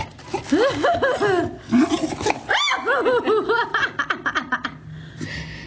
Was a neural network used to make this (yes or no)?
no